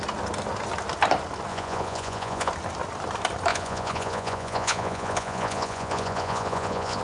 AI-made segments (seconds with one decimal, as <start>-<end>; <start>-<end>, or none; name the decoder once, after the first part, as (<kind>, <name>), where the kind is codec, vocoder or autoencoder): 1.5-2.5 (vocoder, Vocos); 3.5-7.0